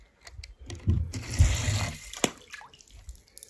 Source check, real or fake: real